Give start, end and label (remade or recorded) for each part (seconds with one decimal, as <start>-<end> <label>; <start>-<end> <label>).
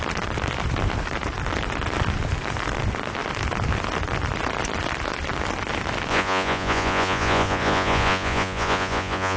0.0-6.1 recorded; 6.1-9.4 remade